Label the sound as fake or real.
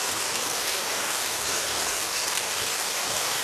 fake